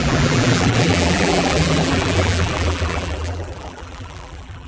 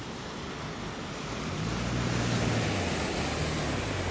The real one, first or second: second